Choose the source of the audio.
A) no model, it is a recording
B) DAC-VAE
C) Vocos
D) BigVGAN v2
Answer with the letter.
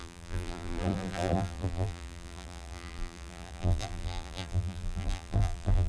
D